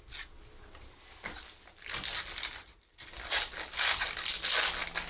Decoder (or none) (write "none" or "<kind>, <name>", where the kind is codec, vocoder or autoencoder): none